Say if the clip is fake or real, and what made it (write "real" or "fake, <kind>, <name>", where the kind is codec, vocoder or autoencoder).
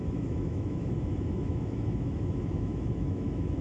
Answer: fake, autoencoder, DAC-VAE